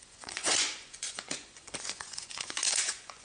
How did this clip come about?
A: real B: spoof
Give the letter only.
B